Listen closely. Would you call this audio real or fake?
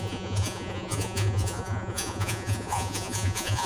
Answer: fake